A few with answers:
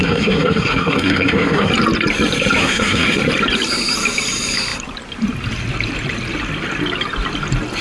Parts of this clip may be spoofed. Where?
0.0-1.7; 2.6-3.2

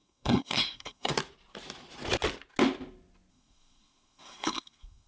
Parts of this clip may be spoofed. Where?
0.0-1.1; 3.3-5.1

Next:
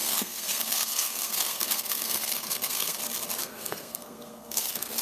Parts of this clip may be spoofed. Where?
0.0-3.0; 3.4-5.0

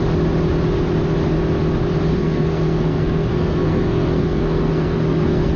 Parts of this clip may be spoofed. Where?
2.1-5.6

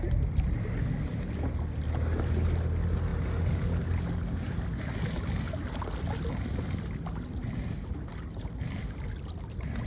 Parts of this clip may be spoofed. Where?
none

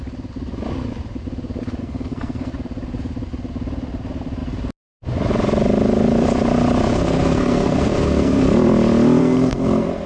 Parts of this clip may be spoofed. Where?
1.8-2.5; 6.9-8.4; 9.2-10.1

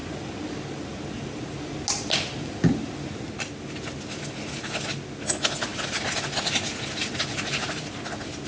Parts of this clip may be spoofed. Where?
none